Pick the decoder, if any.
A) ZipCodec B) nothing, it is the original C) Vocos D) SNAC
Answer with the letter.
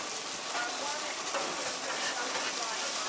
B